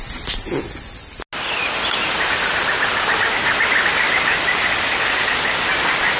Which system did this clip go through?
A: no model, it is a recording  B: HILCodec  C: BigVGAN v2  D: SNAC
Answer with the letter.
A